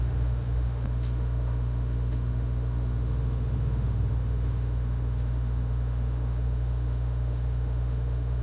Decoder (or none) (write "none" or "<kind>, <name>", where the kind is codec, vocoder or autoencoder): autoencoder, DAC-VAE